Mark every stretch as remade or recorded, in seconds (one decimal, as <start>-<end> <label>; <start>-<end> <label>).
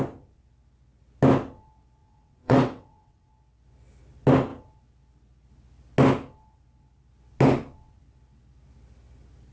0.0-2.0 recorded; 2.0-3.3 remade; 3.3-9.5 recorded